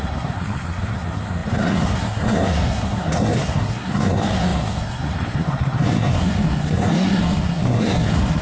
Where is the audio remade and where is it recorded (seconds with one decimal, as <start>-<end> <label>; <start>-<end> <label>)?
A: 0.0-8.4 remade

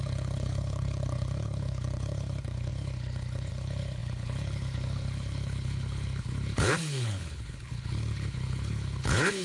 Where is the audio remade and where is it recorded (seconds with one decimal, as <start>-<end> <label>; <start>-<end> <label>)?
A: 0.0-9.4 remade

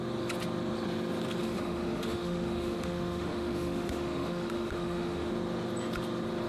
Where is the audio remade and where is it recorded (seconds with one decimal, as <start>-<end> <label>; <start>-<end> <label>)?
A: 0.0-1.4 recorded; 1.4-5.3 remade; 5.3-6.5 recorded